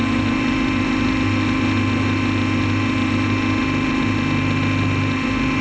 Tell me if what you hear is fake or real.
real